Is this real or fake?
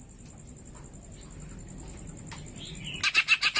real